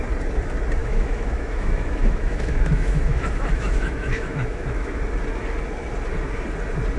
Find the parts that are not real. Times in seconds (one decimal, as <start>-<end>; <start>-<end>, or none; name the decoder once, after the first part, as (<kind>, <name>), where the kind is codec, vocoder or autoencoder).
0.8-5.0 (autoencoder, DAC-VAE)